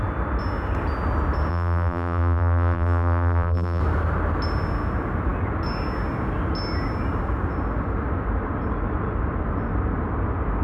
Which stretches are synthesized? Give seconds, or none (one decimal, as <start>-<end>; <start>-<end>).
1.5-3.8